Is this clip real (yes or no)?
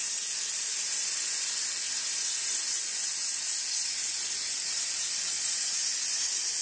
yes